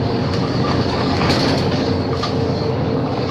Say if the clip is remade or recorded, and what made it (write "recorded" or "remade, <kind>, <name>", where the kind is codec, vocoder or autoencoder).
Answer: remade, codec, DAC